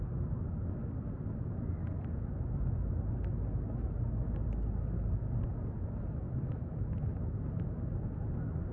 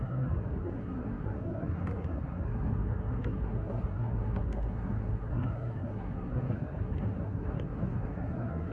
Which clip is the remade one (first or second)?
second